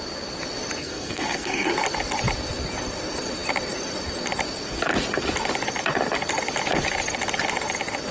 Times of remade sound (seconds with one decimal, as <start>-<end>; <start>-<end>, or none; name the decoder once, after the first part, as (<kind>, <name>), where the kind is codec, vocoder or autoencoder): 0.8-1.7 (codec, SNAC)